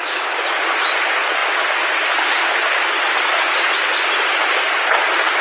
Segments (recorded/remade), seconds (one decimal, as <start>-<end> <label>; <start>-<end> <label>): 0.0-5.4 recorded